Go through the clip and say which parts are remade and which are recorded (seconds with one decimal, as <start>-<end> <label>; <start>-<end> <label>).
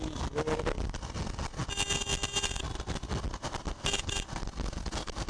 0.0-5.3 recorded